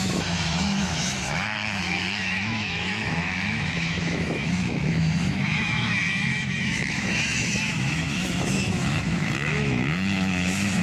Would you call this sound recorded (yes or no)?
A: no